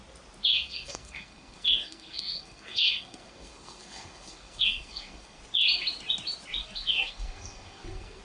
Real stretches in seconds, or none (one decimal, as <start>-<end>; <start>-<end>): 0.0-0.5; 5.4-6.6